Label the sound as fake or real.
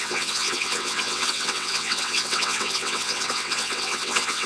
fake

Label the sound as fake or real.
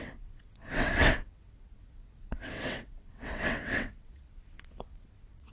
fake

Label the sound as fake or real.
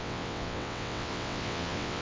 fake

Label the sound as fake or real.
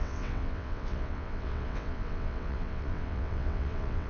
fake